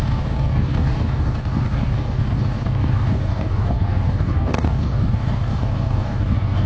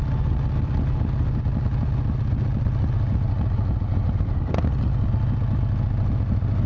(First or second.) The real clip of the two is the second